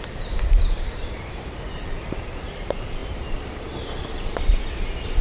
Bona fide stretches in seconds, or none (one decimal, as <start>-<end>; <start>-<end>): 0.0-5.2